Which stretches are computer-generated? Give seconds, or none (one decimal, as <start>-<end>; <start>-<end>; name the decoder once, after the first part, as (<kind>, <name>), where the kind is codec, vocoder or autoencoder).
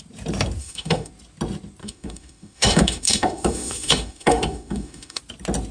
0.6-1.1 (autoencoder, DAC-VAE); 1.8-5.2